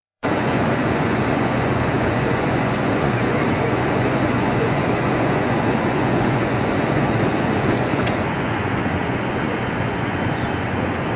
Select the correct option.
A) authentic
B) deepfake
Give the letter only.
B